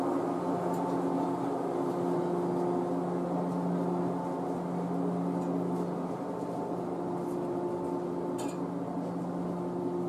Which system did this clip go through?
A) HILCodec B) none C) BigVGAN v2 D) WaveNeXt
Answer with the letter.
B